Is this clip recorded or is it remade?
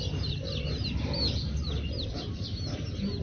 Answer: recorded